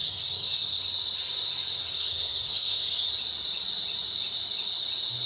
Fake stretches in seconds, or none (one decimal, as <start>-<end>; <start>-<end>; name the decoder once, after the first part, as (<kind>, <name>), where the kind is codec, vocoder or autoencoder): 0.0-0.8 (codec, SNAC); 1.8-3.1